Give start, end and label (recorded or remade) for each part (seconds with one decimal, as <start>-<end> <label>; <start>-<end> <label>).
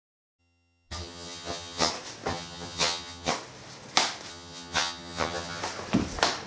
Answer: 0.0-0.4 recorded; 0.4-1.9 remade; 1.9-2.3 recorded; 2.3-3.3 remade; 3.3-4.3 recorded; 4.3-5.6 remade; 5.6-6.5 recorded